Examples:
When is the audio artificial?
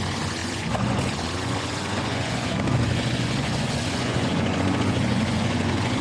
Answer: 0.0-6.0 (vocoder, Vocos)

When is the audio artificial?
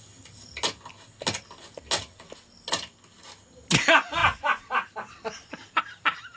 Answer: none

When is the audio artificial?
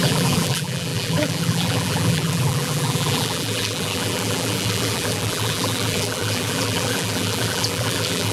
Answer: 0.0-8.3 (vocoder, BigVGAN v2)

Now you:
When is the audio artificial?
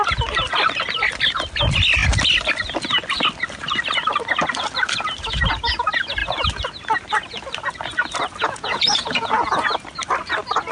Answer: 8.4-9.7 (vocoder, Vocos)